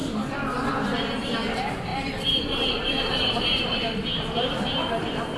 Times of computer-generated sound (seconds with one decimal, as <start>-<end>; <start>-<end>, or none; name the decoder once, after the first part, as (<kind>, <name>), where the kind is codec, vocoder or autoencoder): 1.9-5.4 (vocoder, BigVGAN v2)